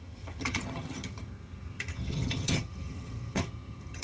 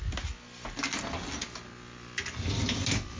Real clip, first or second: second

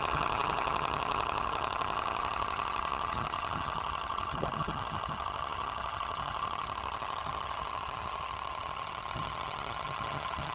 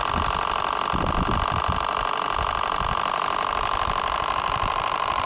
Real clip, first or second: second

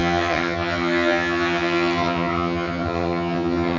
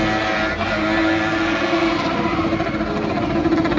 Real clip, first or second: second